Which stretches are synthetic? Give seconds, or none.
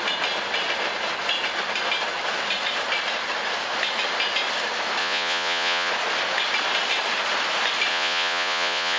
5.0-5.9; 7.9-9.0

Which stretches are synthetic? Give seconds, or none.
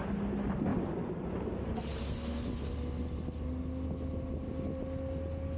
none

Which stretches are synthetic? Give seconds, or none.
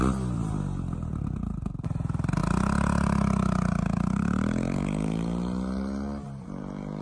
none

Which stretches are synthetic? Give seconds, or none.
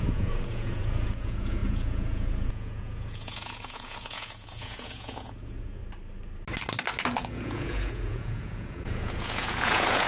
0.0-5.8; 7.2-10.1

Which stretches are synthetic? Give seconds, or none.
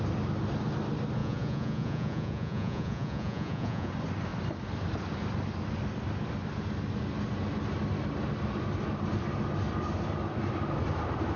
1.2-3.9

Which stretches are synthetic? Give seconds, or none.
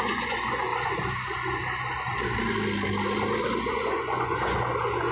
0.0-0.7; 3.6-5.1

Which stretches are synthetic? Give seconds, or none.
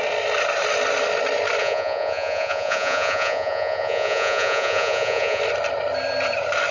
1.6-5.4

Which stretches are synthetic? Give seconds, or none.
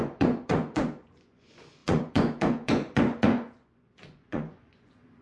0.0-5.2